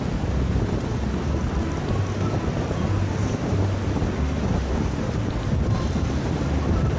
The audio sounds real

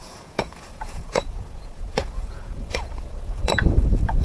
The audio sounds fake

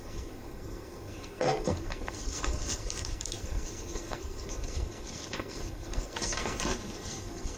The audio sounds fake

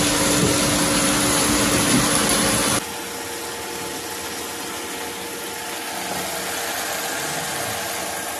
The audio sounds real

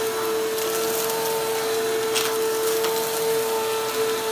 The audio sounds real